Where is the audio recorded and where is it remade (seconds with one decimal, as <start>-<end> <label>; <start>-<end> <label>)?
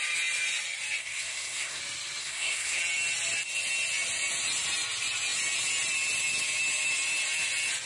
0.0-1.0 recorded; 1.0-1.8 remade; 1.8-2.2 recorded; 2.2-2.8 remade; 2.8-7.9 recorded